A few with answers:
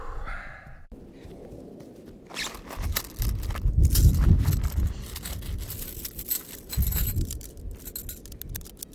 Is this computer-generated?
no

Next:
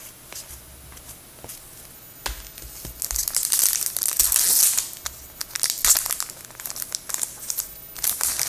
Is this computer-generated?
no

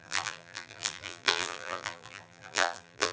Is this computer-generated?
yes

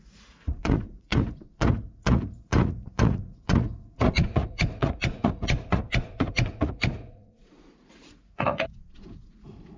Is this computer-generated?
yes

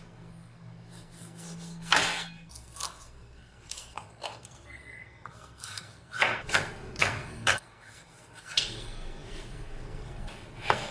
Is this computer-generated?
yes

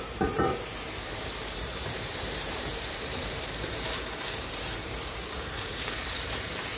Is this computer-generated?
yes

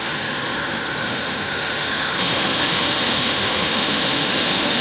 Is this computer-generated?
yes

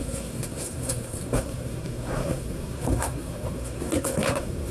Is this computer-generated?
yes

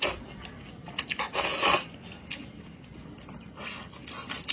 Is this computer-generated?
no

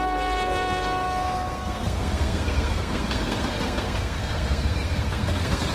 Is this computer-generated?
yes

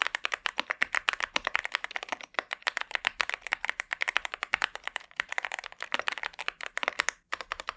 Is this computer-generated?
yes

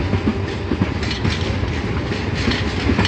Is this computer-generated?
no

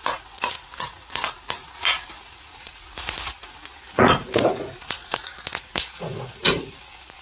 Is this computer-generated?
yes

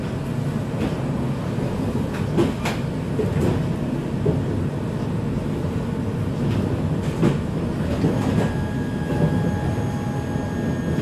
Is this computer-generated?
no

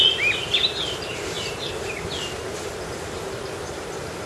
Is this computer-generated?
no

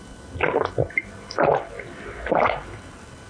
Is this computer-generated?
no